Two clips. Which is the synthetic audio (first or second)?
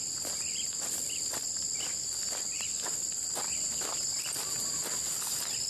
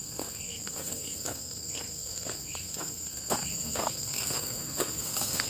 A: second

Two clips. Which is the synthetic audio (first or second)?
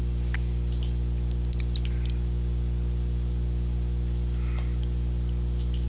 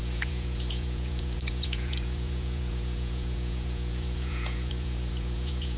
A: second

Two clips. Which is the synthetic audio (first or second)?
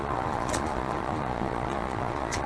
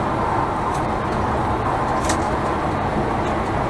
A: first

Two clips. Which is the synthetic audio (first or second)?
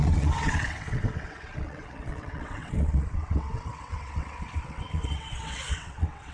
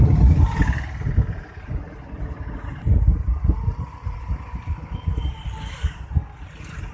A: first